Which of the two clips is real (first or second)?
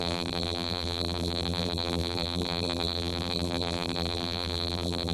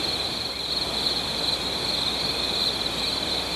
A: second